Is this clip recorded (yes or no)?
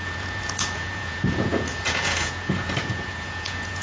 no